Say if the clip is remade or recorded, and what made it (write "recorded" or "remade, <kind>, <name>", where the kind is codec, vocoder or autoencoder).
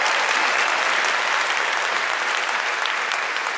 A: recorded